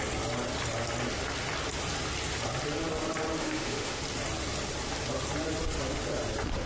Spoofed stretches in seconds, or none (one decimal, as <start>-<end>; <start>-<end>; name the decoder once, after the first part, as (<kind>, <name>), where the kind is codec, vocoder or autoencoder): 3.4-4.0 (autoencoder, DAC-VAE)